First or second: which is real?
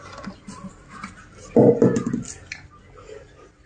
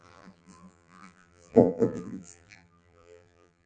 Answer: first